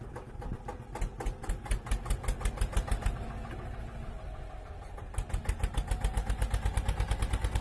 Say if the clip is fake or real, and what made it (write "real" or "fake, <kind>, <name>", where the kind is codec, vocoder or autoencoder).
real